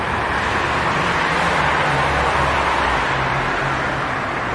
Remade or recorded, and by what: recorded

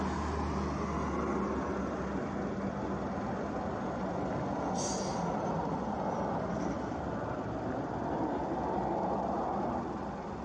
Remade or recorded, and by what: recorded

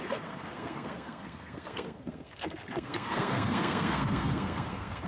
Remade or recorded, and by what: remade, codec, SNAC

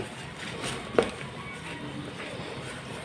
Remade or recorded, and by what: recorded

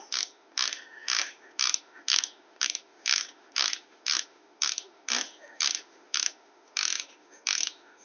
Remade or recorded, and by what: remade, autoencoder, DAC-VAE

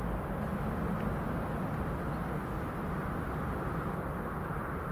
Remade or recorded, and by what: recorded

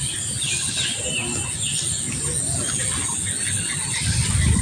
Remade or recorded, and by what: recorded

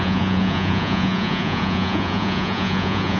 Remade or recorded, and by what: remade, vocoder, Vocos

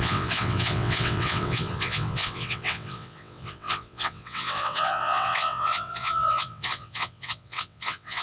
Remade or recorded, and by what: remade, vocoder, WaveNeXt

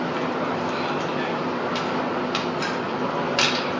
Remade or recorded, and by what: recorded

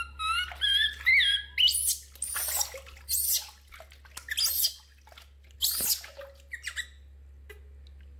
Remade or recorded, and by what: recorded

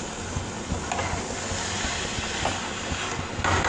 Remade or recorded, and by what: recorded